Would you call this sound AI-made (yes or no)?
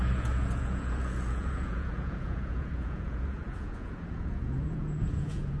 yes